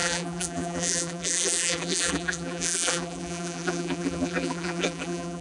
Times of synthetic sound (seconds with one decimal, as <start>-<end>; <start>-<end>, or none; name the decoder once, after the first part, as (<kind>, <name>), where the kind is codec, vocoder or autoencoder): 0.0-5.4 (vocoder, BigVGAN v2)